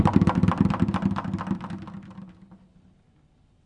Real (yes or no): yes